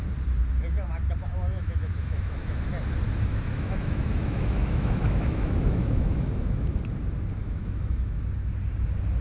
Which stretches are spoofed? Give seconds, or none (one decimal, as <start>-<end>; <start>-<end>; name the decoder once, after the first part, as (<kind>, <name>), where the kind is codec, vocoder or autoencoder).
1.5-2.7 (autoencoder, DAC-VAE); 3.3-6.8; 7.4-8.2